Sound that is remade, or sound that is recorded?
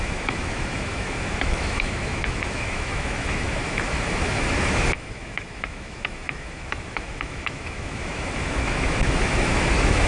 remade